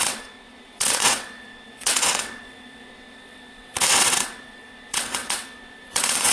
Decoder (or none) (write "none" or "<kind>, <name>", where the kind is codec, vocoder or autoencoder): vocoder, WaveNeXt